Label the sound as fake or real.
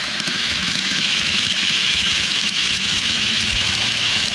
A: fake